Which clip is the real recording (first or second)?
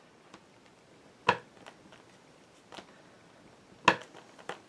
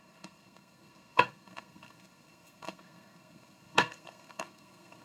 first